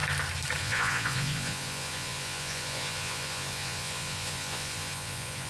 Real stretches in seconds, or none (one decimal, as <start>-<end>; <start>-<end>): 0.0-0.6